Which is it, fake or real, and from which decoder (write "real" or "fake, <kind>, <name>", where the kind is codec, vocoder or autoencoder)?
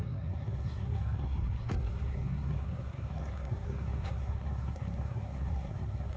fake, codec, SNAC